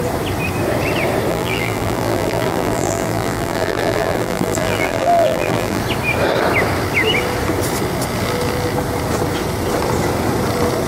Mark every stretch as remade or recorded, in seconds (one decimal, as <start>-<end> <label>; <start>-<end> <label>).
0.0-1.3 recorded; 1.3-5.8 remade; 5.8-10.9 recorded